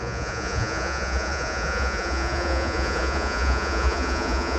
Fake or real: fake